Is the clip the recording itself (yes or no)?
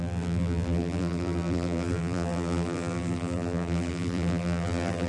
no